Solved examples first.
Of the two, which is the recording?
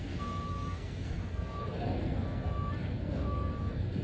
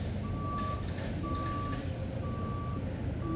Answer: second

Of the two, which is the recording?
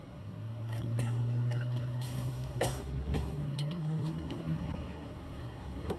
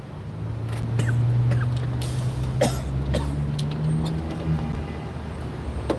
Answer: second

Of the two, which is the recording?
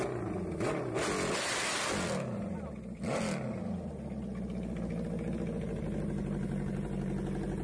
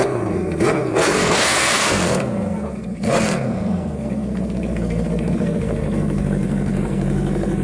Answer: first